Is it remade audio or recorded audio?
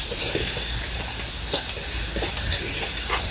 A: remade